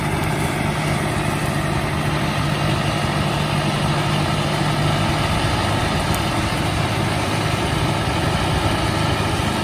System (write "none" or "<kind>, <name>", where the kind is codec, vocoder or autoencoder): none